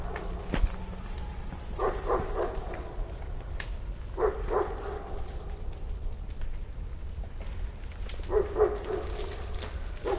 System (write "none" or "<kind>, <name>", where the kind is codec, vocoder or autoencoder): none